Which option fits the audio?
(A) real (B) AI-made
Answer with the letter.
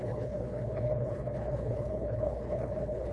B